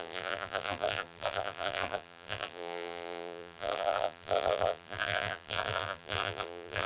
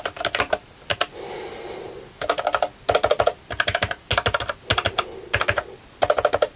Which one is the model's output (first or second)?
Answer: first